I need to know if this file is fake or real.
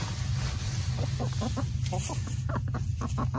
real